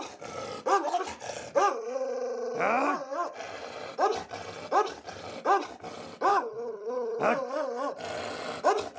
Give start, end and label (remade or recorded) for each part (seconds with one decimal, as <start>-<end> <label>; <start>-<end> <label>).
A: 0.0-6.3 recorded; 6.3-7.2 remade; 7.2-9.0 recorded

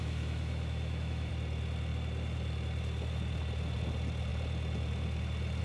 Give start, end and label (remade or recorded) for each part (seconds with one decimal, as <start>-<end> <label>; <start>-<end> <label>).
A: 0.0-1.3 remade; 1.3-5.6 recorded

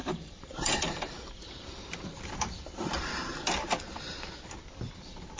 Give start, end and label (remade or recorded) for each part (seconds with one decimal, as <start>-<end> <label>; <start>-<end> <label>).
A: 0.0-3.1 remade; 3.1-4.9 recorded; 4.9-5.4 remade